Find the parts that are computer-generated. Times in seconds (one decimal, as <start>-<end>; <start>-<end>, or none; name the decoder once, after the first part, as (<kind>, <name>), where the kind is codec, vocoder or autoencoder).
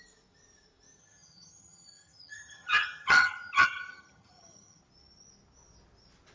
1.0-4.8 (vocoder, HiFi-GAN)